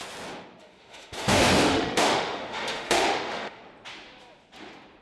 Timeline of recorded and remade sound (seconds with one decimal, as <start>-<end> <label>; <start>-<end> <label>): 0.0-0.6 recorded; 0.6-3.6 remade; 3.6-5.0 recorded